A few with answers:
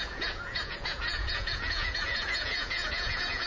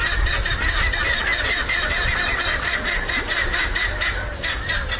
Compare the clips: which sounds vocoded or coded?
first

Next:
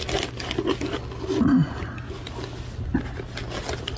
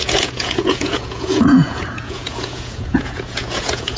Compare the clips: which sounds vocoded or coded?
second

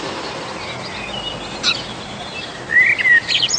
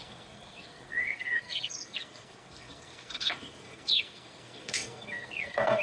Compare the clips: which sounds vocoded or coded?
second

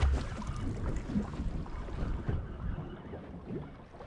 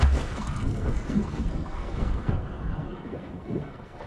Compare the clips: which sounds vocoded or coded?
second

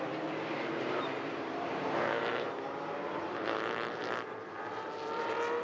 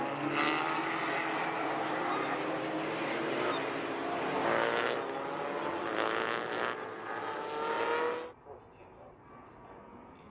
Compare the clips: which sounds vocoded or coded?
first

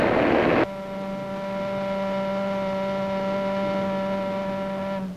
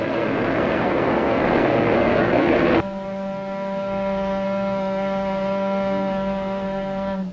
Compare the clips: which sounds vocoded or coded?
second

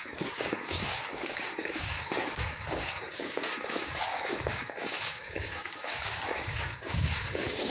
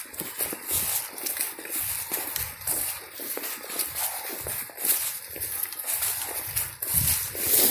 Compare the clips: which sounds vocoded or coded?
first